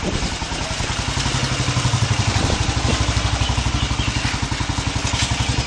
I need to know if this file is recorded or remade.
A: recorded